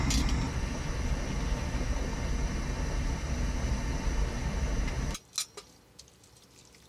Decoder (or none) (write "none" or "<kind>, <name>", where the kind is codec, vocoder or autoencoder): none